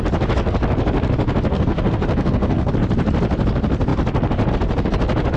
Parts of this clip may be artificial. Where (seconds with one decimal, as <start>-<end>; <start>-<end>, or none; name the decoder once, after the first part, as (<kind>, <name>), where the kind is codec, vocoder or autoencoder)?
1.5-2.7 (codec, SNAC)